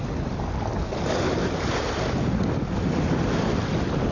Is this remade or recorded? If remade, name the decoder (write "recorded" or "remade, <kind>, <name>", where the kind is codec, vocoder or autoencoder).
recorded